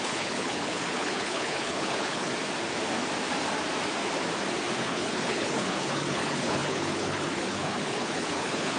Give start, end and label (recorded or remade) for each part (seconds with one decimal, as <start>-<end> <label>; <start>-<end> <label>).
0.0-2.3 remade; 2.3-4.8 recorded; 4.8-8.8 remade